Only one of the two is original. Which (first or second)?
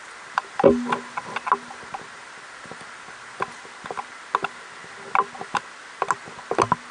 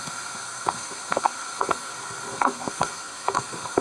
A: first